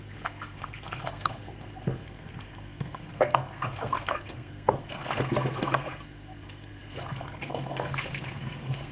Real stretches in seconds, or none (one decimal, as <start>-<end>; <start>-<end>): none